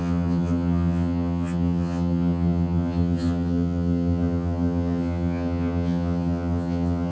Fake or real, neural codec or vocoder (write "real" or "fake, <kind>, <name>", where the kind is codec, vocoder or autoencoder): fake, vocoder, HiFi-GAN